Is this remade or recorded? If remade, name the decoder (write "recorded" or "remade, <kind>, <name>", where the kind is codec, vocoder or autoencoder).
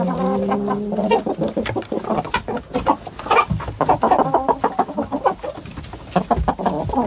recorded